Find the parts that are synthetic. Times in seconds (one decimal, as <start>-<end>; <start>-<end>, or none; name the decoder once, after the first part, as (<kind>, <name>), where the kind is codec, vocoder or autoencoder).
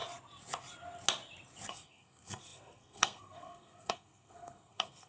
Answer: 1.7-5.1 (codec, SNAC)